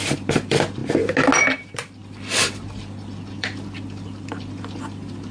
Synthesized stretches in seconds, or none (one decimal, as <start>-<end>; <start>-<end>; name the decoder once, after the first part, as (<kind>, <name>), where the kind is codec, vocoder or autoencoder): 0.0-0.8 (vocoder, BigVGAN v2); 1.4-5.3